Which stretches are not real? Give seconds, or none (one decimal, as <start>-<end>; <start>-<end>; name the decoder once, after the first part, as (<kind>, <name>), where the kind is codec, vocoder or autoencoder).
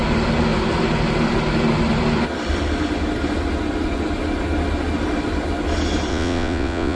6.1-7.0 (vocoder, Vocos)